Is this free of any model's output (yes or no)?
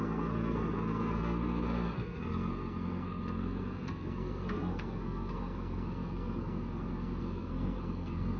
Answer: no